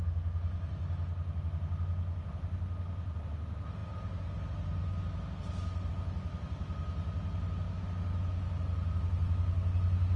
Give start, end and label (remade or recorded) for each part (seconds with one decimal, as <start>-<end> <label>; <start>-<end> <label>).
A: 0.0-10.2 recorded